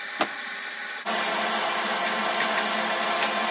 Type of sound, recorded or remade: recorded